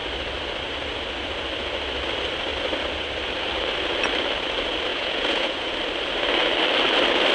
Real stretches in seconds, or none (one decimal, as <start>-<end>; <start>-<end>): 0.0-4.9; 5.7-7.3